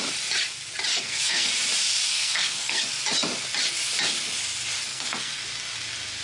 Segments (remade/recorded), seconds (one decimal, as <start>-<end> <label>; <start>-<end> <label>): 0.0-0.9 recorded; 0.9-1.5 remade; 1.5-2.1 recorded; 2.1-2.8 remade; 2.8-4.9 recorded; 4.9-5.4 remade; 5.4-6.2 recorded